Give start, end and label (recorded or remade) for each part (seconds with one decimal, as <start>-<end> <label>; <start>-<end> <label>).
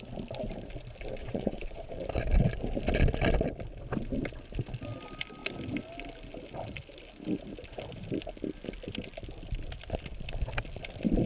0.0-1.2 recorded; 1.2-2.0 remade; 2.0-11.3 recorded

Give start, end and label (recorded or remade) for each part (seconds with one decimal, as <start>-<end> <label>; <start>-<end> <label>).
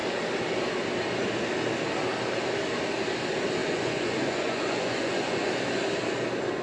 0.0-3.6 recorded; 3.6-5.5 remade; 5.5-6.6 recorded